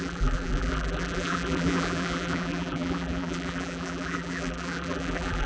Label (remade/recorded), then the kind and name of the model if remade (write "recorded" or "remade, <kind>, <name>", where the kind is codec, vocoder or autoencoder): remade, vocoder, BigVGAN v2